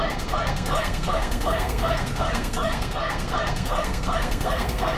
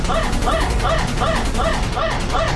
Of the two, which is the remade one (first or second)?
first